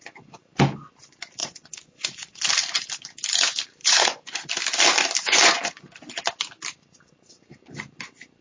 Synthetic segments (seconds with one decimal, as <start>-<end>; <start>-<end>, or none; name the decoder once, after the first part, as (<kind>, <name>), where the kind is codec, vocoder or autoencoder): 1.4-2.4 (vocoder, Vocos); 3.8-4.5; 5.2-5.8